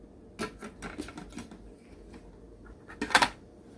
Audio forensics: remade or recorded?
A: recorded